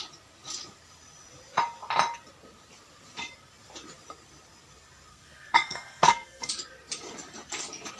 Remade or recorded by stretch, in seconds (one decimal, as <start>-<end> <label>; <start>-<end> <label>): 0.0-5.1 recorded; 5.1-6.5 remade; 6.5-8.0 recorded